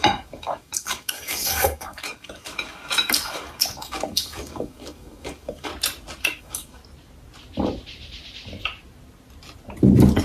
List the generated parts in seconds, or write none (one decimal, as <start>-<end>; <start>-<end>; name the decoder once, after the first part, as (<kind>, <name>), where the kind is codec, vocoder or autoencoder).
0.0-5.7 (codec, DAC); 6.2-6.8